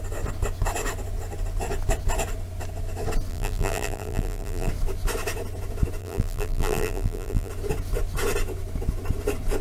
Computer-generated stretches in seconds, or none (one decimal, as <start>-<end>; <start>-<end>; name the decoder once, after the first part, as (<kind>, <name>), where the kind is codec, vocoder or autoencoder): 3.3-4.7 (vocoder, BigVGAN v2); 6.0-7.5